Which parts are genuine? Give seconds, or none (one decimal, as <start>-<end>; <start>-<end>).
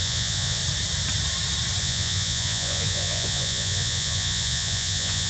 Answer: 0.6-1.8